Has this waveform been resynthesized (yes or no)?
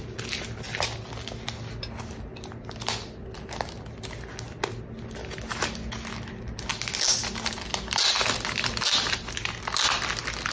no